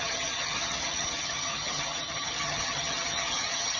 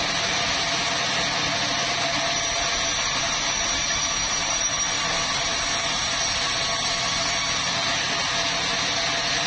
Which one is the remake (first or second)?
first